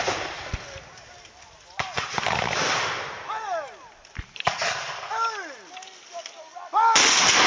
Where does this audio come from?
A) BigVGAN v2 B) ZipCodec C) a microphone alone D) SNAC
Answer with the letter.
C